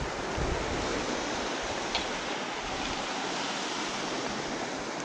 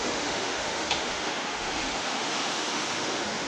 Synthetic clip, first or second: second